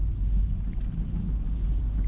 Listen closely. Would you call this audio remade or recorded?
recorded